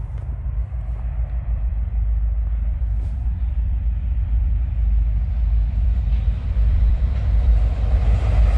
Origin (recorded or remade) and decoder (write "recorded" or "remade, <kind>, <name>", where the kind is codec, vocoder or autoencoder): remade, vocoder, BigVGAN v2